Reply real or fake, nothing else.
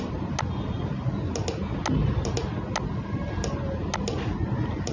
real